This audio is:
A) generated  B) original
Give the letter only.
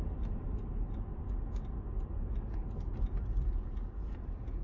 B